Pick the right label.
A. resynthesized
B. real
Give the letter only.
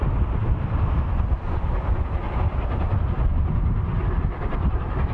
B